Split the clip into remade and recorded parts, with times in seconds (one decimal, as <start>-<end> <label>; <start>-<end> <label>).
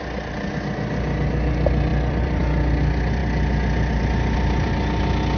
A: 0.0-1.9 recorded; 1.9-2.4 remade; 2.4-5.4 recorded